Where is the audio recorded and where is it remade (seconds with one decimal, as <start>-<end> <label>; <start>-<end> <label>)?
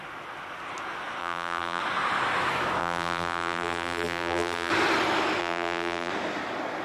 0.0-1.2 recorded; 1.2-1.8 remade; 1.8-2.8 recorded; 2.8-4.7 remade; 4.7-5.4 recorded; 5.4-6.1 remade; 6.1-6.8 recorded